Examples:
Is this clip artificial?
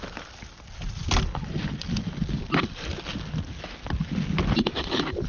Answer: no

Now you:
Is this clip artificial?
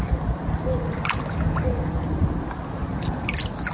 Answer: no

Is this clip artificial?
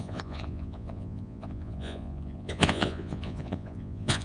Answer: yes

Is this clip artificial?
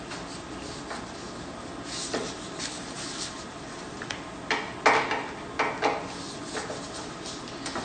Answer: no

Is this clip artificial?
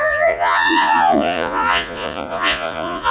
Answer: yes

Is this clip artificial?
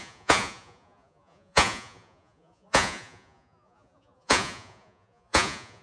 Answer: yes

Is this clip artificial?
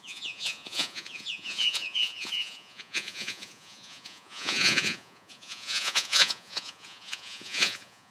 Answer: yes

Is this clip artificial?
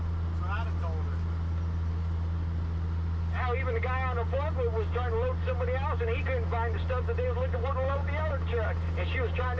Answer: no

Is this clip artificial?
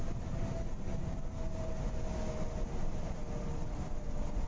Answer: no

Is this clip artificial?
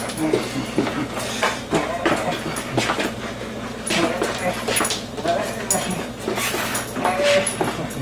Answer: no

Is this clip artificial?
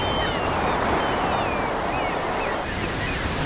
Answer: no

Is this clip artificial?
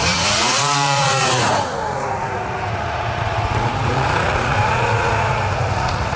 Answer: yes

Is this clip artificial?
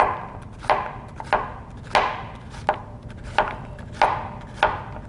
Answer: no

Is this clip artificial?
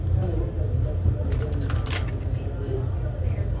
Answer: no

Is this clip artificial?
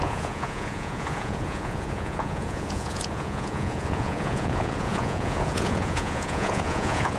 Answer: yes